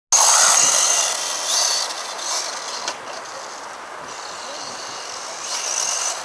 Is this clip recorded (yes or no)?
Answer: yes